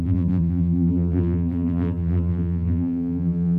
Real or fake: fake